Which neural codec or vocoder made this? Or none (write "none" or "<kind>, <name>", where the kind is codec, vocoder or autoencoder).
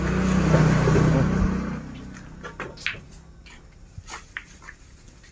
none